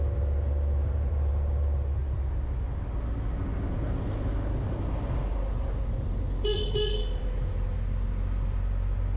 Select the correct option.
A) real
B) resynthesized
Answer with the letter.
A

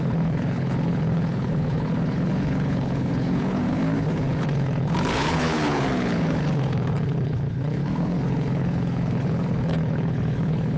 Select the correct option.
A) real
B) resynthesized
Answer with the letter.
B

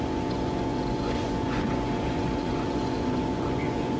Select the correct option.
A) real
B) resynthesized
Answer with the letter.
B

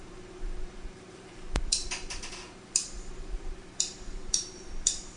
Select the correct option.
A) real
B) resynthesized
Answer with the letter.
B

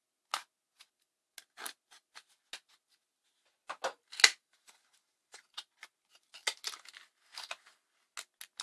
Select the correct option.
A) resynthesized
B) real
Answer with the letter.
B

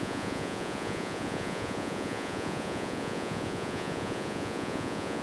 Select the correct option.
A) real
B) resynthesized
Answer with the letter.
B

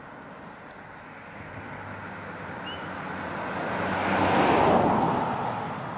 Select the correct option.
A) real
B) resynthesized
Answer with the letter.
A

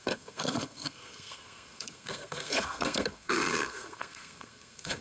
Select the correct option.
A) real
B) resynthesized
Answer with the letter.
B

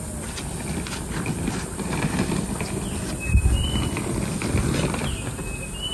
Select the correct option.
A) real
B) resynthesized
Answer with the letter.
A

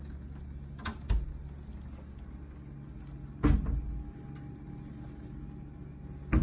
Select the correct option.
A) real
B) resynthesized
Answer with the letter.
A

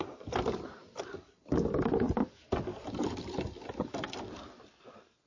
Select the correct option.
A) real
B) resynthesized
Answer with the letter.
B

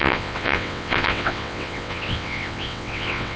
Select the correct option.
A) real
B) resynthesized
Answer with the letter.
B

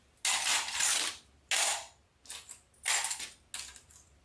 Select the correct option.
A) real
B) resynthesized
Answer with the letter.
A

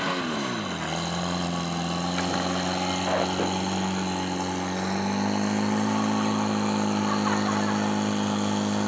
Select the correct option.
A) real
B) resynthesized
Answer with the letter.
A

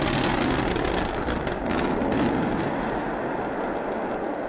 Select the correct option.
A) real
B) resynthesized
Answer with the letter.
A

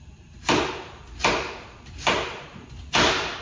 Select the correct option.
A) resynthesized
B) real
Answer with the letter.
B